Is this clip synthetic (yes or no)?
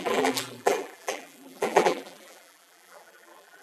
yes